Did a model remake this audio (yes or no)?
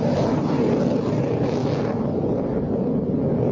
no